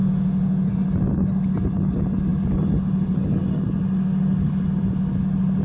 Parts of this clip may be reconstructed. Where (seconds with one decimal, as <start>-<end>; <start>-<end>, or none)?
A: 0.0-0.7